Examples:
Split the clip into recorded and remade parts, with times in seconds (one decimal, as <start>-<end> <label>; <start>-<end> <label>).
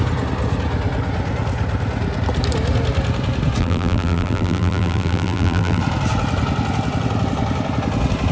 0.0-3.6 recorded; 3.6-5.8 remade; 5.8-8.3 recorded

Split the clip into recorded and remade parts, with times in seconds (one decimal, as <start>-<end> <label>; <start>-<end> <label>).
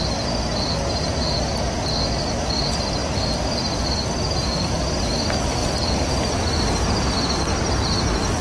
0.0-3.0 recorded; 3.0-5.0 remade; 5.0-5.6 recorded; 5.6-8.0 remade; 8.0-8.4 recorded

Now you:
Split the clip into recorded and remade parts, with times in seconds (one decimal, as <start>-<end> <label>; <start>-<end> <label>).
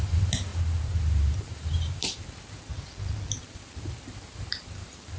0.0-2.7 remade; 2.7-3.4 recorded; 3.4-5.2 remade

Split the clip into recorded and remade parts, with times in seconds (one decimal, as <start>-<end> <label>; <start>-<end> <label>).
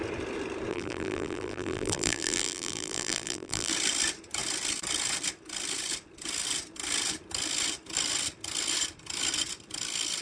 0.0-0.7 recorded; 0.7-3.7 remade; 3.7-10.2 recorded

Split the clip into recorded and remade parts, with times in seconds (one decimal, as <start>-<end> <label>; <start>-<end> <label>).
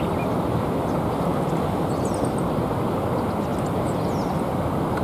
0.0-1.3 recorded; 1.3-1.9 remade; 1.9-3.5 recorded; 3.5-4.0 remade; 4.0-5.0 recorded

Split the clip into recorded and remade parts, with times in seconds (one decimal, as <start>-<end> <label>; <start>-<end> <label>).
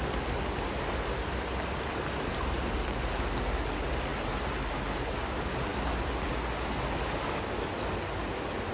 0.0-4.1 recorded; 4.1-4.7 remade; 4.7-8.7 recorded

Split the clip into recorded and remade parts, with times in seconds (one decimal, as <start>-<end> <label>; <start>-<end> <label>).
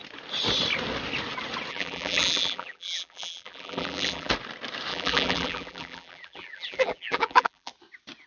0.0-1.7 recorded; 1.7-4.3 remade; 4.3-4.9 recorded; 4.9-7.7 remade; 7.7-8.3 recorded